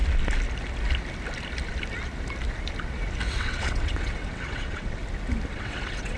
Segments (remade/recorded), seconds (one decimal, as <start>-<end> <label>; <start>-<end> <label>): 0.0-3.3 recorded; 3.3-5.0 remade; 5.0-5.5 recorded; 5.5-6.2 remade